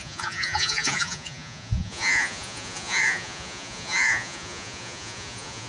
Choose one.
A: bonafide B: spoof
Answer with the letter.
B